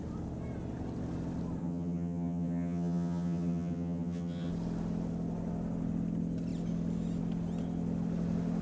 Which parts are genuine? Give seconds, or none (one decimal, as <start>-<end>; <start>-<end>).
0.0-1.6; 4.5-8.6